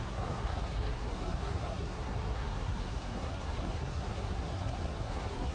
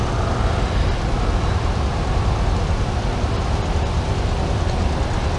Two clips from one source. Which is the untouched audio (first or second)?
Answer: second